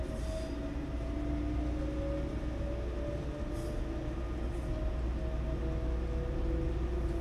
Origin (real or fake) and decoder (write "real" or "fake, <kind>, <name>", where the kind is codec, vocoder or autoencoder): real